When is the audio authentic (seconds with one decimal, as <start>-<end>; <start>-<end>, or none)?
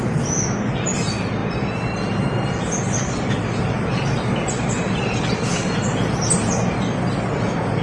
0.0-7.8